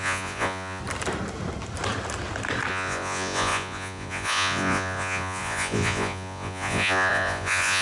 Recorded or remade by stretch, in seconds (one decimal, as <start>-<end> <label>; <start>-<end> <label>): 0.0-0.8 remade; 0.8-2.7 recorded; 2.7-7.8 remade